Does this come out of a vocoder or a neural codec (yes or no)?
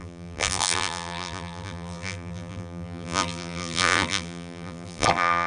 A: yes